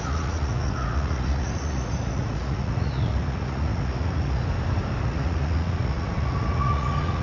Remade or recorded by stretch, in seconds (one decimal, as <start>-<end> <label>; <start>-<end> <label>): 0.0-4.4 remade; 4.4-5.0 recorded; 5.0-7.2 remade